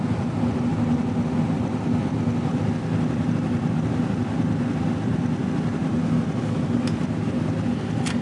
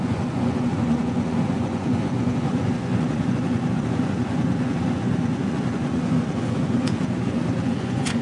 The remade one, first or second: second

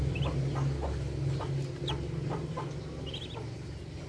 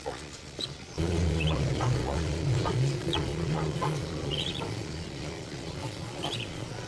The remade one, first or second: second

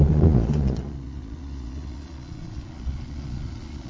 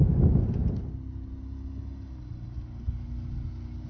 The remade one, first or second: first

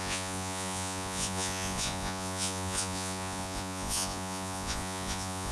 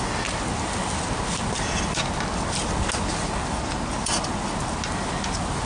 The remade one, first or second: first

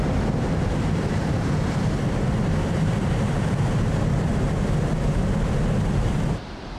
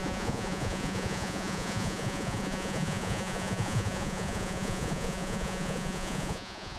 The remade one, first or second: second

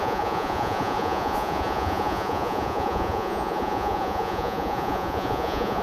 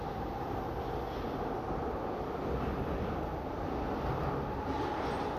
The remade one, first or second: first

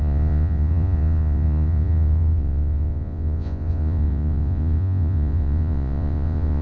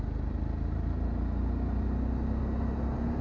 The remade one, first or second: first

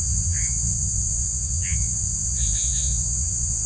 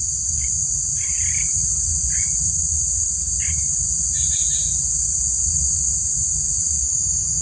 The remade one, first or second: first